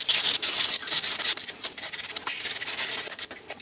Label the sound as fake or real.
real